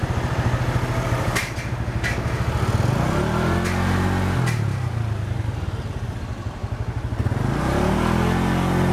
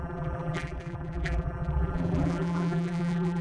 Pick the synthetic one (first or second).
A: second